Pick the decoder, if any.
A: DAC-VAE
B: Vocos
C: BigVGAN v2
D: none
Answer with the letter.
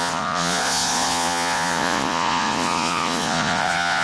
B